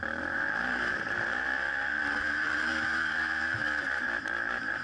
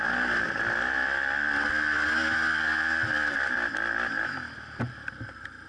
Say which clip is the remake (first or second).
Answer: first